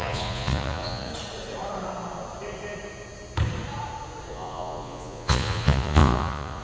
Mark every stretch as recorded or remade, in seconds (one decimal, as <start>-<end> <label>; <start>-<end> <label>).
0.0-1.1 remade; 1.1-4.3 recorded; 4.3-6.6 remade